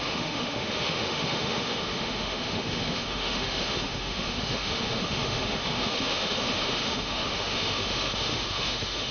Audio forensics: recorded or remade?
remade